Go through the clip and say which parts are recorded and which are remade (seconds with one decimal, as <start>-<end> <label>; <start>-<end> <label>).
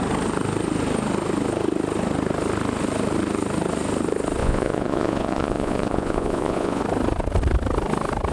0.0-4.4 recorded; 4.4-6.8 remade; 6.8-8.3 recorded